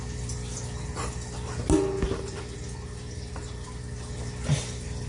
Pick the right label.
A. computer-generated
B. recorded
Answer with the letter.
B